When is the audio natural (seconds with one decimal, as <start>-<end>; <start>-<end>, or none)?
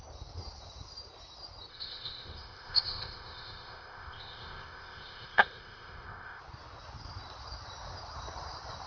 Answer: 0.0-1.7; 6.4-8.9